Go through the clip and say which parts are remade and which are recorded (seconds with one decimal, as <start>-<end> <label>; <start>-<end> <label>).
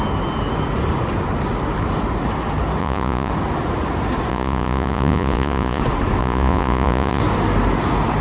0.0-2.8 recorded; 2.8-3.3 remade; 3.3-4.3 recorded; 4.3-5.8 remade; 5.8-6.2 recorded; 6.2-7.2 remade; 7.2-8.2 recorded